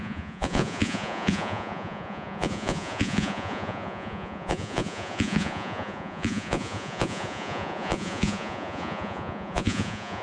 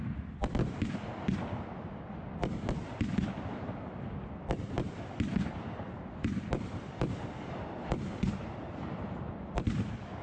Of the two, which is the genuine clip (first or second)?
second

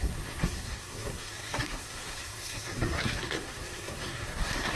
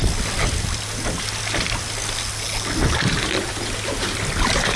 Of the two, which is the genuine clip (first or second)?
second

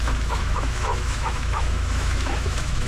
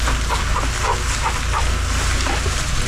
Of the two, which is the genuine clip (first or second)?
second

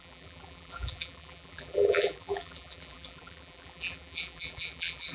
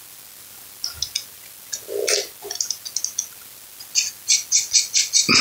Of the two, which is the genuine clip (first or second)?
second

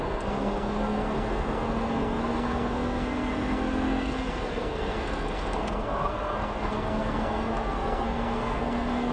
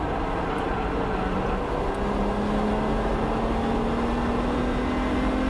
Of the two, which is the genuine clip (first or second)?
second